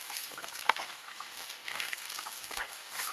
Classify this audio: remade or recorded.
remade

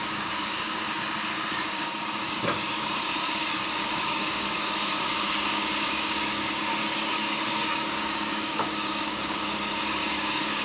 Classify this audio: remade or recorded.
remade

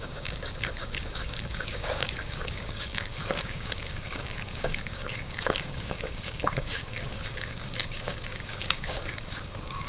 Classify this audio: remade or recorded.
remade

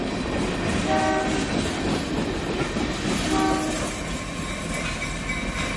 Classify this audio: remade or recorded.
recorded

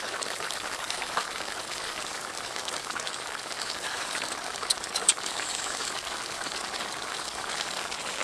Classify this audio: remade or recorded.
remade